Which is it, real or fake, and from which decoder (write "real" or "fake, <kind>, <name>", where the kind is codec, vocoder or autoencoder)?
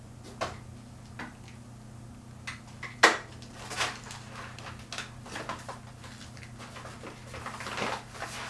real